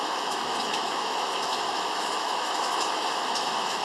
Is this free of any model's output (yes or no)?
no